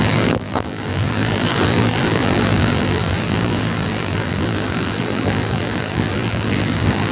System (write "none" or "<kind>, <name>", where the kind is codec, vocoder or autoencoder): vocoder, BigVGAN v2